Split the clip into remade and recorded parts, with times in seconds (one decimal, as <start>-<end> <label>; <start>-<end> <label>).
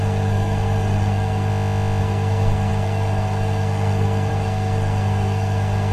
0.0-1.5 remade; 1.5-2.0 recorded; 2.0-5.9 remade